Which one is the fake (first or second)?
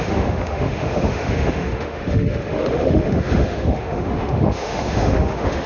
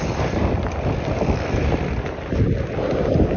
first